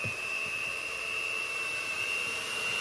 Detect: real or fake fake